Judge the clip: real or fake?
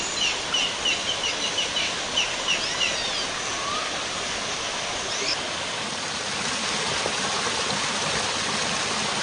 real